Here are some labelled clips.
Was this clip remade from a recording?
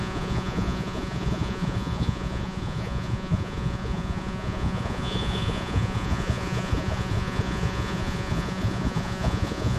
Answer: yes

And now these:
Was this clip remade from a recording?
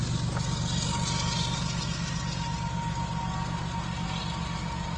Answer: no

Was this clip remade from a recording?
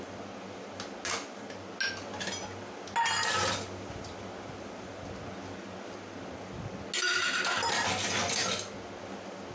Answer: no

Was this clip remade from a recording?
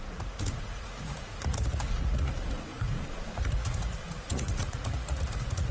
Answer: yes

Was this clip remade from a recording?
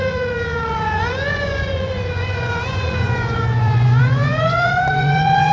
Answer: yes